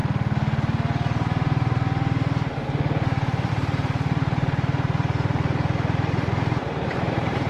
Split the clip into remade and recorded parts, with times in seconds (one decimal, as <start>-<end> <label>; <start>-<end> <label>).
0.0-3.5 recorded; 3.5-7.5 remade